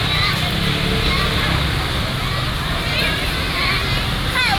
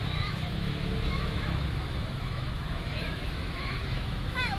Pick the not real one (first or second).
second